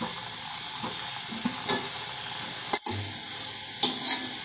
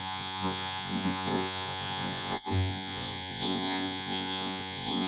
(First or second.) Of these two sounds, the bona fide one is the first